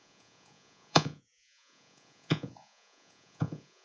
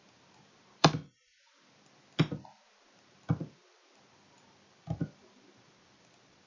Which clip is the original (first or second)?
second